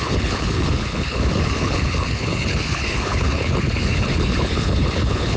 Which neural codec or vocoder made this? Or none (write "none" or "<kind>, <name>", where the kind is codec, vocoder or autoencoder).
codec, HILCodec